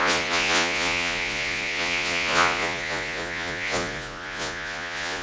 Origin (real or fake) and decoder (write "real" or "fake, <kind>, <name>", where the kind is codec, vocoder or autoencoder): fake, vocoder, Vocos